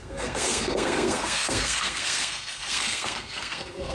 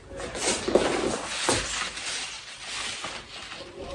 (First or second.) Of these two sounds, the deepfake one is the first